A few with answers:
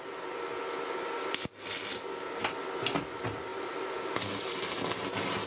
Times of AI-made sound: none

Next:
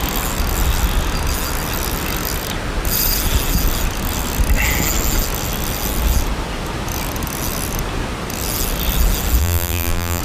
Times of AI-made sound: 9.4-10.2